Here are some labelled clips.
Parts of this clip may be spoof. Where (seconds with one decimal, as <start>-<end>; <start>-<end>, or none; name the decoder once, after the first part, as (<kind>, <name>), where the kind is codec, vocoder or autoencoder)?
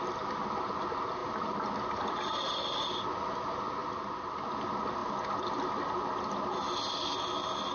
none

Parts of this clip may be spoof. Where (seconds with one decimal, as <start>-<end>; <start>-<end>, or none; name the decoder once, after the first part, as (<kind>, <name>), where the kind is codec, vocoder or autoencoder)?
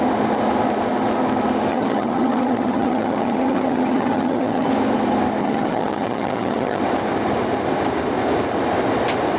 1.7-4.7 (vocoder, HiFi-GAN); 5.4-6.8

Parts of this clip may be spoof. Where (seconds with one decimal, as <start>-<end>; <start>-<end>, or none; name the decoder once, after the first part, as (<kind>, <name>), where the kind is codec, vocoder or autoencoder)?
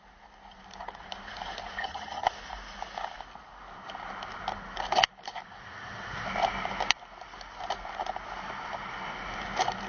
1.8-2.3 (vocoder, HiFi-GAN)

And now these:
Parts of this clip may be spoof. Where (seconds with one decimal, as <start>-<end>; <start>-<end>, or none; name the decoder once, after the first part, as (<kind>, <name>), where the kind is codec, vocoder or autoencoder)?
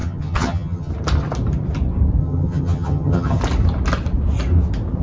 0.0-0.9 (vocoder, HiFi-GAN); 2.2-3.4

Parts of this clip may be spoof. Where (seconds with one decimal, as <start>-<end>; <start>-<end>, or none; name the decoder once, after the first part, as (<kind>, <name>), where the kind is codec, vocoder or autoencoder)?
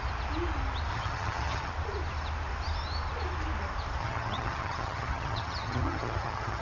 0.9-1.7 (vocoder, HiFi-GAN); 4.0-6.6